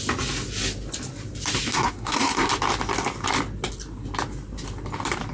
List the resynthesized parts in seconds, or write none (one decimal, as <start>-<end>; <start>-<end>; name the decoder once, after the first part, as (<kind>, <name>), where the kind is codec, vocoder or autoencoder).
1.7-2.5 (codec, SNAC)

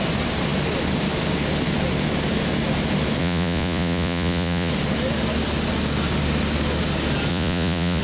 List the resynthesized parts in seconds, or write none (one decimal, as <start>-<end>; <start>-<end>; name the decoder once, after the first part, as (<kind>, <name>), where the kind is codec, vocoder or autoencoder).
3.2-4.7 (vocoder, Vocos); 7.3-8.0